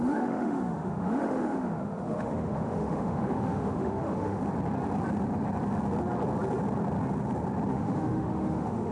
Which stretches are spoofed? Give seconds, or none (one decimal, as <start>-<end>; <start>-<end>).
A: 0.0-4.4; 7.7-8.9